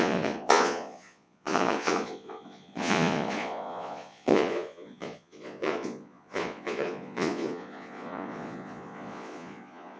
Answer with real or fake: fake